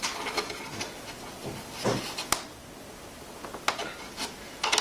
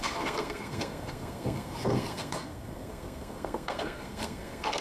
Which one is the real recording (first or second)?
first